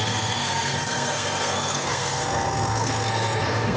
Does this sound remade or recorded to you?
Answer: remade